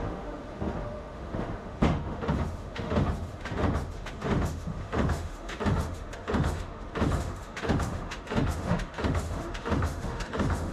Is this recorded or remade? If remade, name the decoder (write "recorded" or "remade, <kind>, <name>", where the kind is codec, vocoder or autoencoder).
remade, autoencoder, DAC-VAE